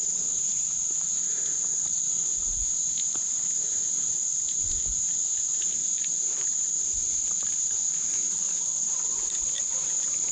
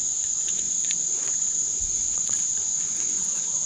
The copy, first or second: second